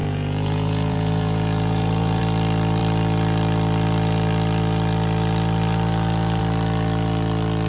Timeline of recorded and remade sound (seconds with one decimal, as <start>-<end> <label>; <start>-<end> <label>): 0.0-2.2 remade; 2.2-7.7 recorded